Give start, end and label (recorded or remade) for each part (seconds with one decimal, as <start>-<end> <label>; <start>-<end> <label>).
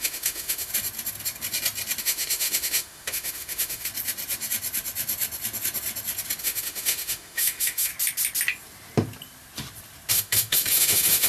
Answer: 0.0-0.7 remade; 0.7-2.0 recorded; 2.0-3.9 remade; 3.9-6.4 recorded; 6.4-7.9 remade; 7.9-10.1 recorded; 10.1-11.3 remade